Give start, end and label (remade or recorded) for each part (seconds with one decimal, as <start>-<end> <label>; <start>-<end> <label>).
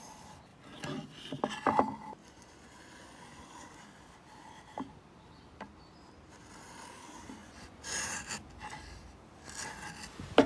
0.0-2.2 recorded; 2.2-3.7 remade; 3.7-7.4 recorded; 7.4-8.3 remade; 8.3-10.5 recorded